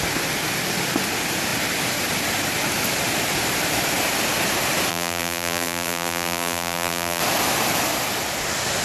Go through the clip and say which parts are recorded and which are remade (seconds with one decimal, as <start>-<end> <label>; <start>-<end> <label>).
0.0-4.9 recorded; 4.9-7.2 remade; 7.2-8.8 recorded